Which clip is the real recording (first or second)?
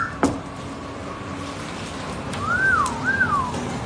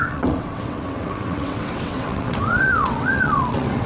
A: first